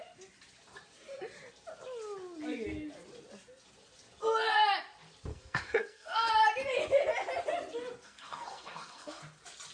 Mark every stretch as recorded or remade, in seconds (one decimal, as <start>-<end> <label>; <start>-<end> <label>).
0.0-5.3 recorded; 5.3-6.3 remade; 6.3-8.0 recorded; 8.0-9.2 remade; 9.2-9.7 recorded